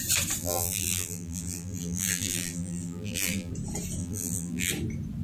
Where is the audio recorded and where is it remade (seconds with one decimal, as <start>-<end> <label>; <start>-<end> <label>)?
0.0-0.4 recorded; 0.4-3.5 remade; 3.5-4.0 recorded; 4.0-4.7 remade; 4.7-5.2 recorded